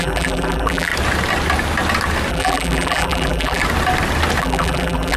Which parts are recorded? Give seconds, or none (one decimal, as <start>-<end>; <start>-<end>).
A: 0.9-2.3; 3.6-4.4